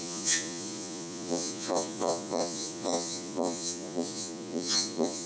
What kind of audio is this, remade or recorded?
remade